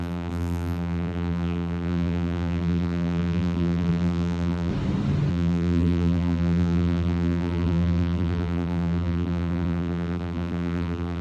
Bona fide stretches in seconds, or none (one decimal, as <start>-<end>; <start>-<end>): 4.7-5.3